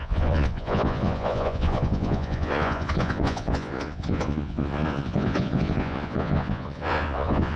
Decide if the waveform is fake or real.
fake